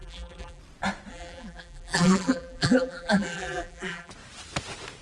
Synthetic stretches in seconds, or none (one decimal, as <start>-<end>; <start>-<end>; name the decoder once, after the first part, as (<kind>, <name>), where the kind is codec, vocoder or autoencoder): 0.0-0.6 (vocoder, BigVGAN v2); 1.1-4.1